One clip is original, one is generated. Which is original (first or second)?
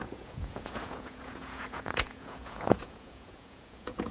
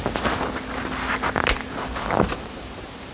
second